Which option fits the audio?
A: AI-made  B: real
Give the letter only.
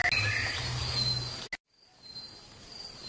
B